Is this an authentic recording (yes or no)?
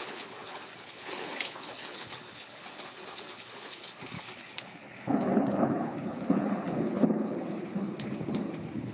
no